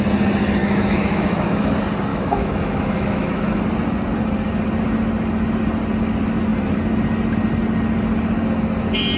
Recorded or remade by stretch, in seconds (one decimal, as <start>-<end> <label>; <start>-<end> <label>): 0.0-0.6 recorded; 0.6-1.7 remade; 1.7-2.1 recorded; 2.1-3.6 remade; 3.6-9.2 recorded